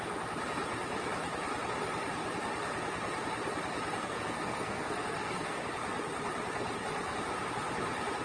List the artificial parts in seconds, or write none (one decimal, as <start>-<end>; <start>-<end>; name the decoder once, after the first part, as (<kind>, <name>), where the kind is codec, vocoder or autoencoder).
4.0-5.6 (codec, SNAC)